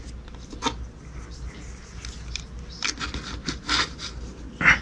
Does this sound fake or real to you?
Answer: real